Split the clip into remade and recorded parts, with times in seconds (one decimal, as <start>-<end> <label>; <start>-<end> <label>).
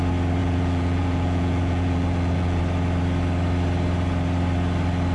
0.0-0.4 recorded; 0.4-2.6 remade; 2.6-5.1 recorded